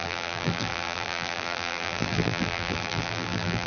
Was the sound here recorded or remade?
remade